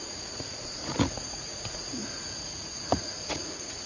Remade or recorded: remade